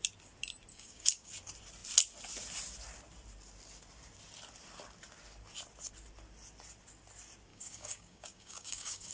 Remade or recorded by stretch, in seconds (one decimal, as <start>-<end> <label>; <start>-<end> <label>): 0.0-0.7 recorded; 0.7-1.3 remade; 1.3-7.5 recorded; 7.5-9.1 remade